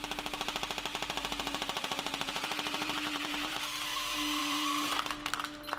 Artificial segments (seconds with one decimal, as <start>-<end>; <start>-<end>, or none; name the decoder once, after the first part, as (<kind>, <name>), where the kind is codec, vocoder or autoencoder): 0.9-3.6 (vocoder, BigVGAN v2); 4.4-4.9